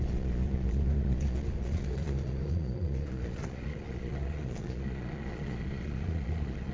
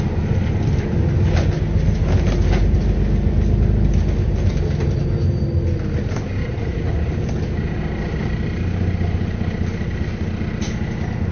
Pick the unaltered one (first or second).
second